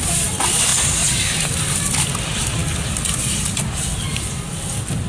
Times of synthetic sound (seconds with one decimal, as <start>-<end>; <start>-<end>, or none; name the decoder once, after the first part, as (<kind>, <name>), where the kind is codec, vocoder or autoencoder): none